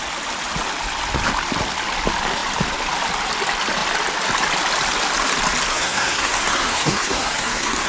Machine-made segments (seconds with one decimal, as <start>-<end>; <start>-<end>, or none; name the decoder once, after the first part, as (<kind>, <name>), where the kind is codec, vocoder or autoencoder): 5.7-7.9 (codec, SNAC)